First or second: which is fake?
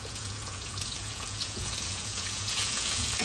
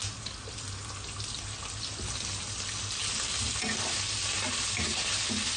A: first